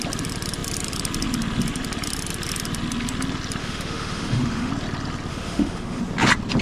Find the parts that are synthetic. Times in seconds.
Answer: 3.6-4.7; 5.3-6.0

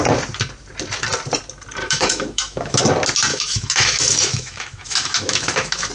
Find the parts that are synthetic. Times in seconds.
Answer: 1.8-2.8; 3.3-5.9

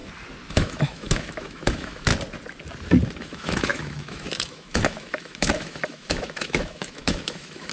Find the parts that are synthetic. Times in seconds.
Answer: 0.5-2.1; 3.2-7.7

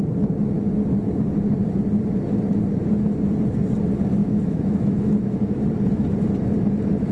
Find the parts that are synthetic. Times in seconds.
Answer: 4.2-5.6

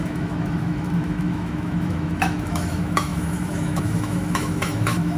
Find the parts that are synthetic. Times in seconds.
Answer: 0.0-5.2

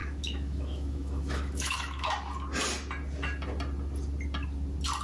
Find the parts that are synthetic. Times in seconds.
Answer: 0.0-2.1

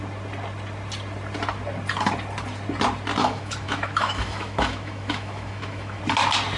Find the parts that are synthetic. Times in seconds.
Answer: 3.2-6.0